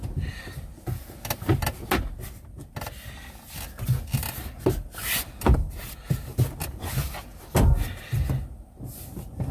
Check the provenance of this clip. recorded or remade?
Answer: recorded